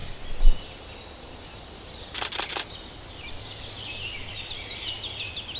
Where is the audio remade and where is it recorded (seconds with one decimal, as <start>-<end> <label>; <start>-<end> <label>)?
0.0-5.6 recorded